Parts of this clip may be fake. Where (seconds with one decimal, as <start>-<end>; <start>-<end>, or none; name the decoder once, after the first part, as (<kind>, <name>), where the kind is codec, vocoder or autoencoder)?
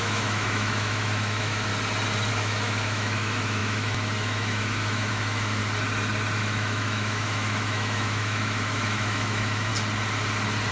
0.0-1.7 (autoencoder, DAC-VAE); 2.3-5.6; 6.4-9.7